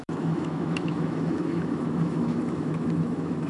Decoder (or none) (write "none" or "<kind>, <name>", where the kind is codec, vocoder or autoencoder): autoencoder, DAC-VAE